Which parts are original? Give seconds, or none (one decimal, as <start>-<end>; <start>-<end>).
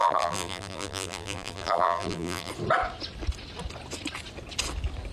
2.5-5.1